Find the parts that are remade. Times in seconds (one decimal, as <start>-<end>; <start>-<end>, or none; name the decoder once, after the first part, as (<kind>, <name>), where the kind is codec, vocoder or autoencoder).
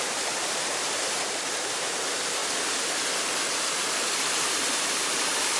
0.0-2.4 (vocoder, BigVGAN v2); 4.5-5.6